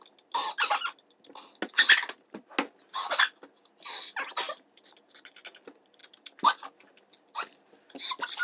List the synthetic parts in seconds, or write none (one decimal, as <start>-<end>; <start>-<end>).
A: none